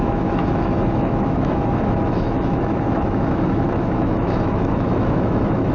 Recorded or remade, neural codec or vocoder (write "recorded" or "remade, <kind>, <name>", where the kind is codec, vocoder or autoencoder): remade, autoencoder, DAC-VAE